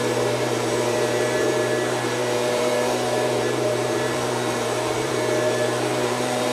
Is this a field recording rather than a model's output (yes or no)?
no